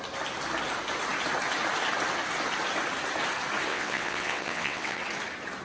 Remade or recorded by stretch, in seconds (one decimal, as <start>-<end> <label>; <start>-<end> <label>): 0.0-3.7 recorded; 3.7-5.0 remade; 5.0-5.6 recorded